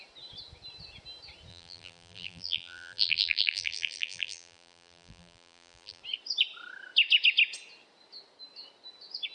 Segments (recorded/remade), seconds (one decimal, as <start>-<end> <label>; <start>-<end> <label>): 0.0-1.5 recorded; 1.5-6.0 remade; 6.0-9.3 recorded